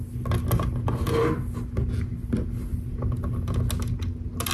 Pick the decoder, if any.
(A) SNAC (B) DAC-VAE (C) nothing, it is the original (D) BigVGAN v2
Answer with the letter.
C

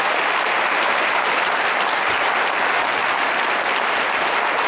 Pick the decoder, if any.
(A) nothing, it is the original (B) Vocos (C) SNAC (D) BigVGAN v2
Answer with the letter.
A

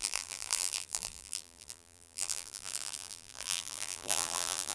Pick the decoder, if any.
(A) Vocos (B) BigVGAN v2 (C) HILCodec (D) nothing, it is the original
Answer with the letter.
B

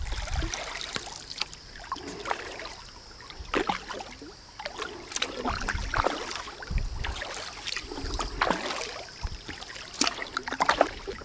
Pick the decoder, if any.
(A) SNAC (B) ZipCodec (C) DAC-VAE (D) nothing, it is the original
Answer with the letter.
D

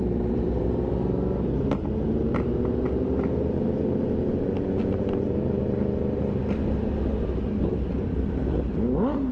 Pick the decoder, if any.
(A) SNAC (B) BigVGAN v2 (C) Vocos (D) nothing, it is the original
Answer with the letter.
D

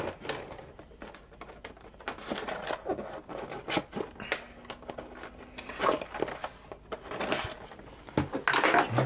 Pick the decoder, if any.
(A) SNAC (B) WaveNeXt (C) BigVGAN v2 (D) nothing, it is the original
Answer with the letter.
D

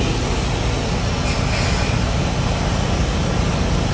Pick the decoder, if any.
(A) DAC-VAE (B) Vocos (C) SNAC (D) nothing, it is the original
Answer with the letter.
D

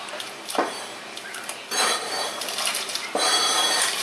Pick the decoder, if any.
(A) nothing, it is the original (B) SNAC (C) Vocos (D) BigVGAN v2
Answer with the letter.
D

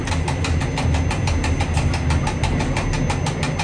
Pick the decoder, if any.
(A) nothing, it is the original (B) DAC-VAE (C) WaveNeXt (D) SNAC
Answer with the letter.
A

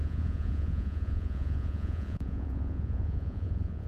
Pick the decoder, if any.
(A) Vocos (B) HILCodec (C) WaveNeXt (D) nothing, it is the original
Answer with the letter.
A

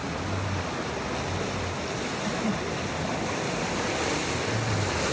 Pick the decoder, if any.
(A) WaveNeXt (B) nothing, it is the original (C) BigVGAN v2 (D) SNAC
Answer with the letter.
B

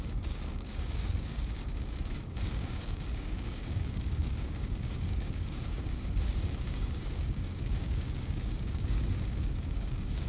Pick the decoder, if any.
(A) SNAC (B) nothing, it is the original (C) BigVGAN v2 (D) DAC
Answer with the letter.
D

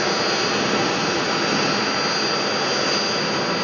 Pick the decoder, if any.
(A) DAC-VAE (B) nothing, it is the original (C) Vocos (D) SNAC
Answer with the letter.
B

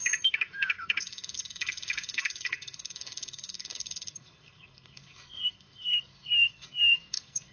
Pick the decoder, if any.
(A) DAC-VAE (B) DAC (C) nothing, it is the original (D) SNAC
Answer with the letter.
D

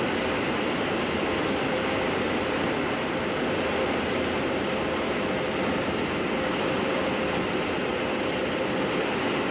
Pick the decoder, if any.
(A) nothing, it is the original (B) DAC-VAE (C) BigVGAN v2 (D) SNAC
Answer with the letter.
C